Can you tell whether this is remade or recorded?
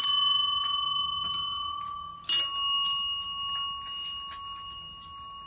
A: recorded